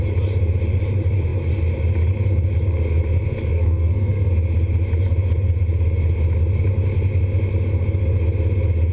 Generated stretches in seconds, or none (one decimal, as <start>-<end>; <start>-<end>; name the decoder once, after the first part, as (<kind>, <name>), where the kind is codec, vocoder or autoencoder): 3.5-4.3 (codec, SNAC)